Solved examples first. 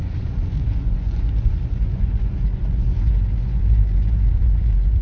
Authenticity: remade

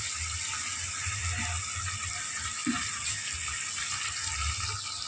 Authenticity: recorded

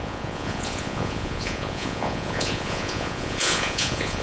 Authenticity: remade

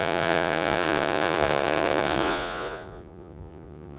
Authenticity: remade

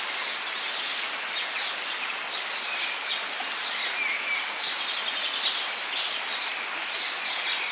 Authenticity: recorded